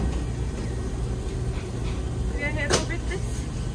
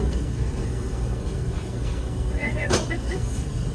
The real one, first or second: first